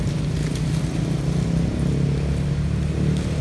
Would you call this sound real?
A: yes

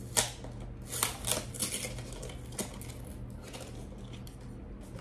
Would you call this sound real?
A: yes